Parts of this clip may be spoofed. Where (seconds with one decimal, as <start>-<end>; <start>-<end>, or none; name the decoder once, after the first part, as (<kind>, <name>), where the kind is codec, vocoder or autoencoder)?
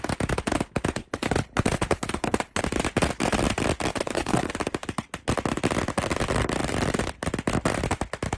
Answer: 1.0-2.6 (codec, HILCodec); 3.9-4.5